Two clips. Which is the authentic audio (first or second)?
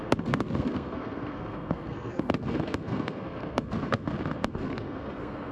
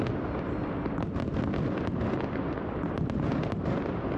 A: second